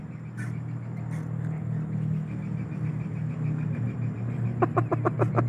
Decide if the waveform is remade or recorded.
recorded